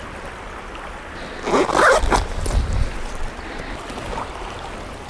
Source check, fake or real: real